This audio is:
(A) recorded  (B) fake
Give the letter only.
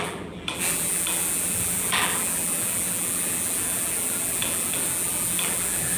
B